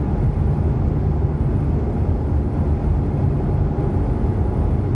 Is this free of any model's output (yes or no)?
yes